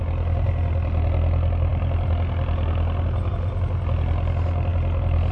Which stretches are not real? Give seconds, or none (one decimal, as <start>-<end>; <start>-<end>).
none